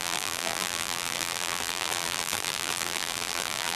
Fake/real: fake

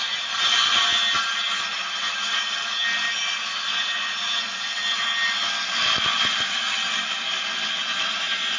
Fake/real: real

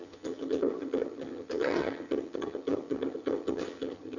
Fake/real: fake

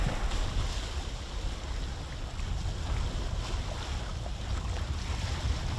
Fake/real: real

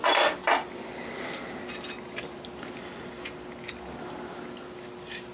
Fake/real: real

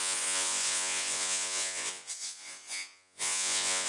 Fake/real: fake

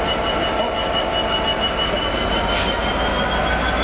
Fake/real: real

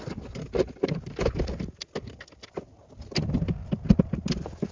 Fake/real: real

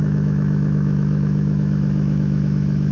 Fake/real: fake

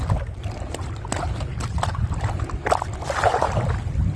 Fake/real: real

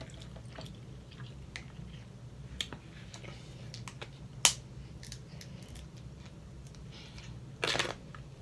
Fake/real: real